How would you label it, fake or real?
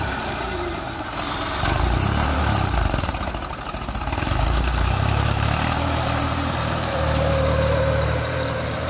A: fake